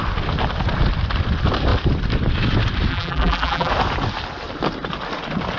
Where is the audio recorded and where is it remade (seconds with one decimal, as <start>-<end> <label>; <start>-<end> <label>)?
0.0-2.9 recorded; 2.9-3.7 remade; 3.7-5.6 recorded